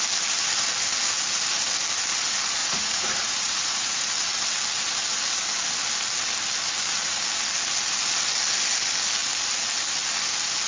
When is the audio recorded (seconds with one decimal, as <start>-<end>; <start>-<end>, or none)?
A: 0.0-2.6; 4.1-10.7